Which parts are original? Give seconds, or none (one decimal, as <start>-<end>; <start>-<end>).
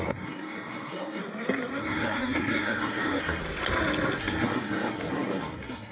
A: 1.2-1.8; 3.4-4.2